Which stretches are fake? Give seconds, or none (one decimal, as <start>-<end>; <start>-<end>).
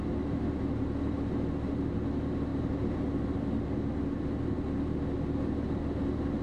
2.5-3.0